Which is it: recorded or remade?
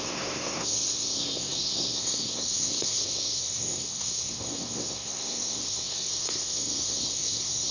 remade